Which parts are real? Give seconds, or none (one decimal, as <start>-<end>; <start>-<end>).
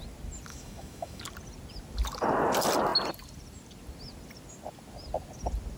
0.0-0.5; 1.2-5.8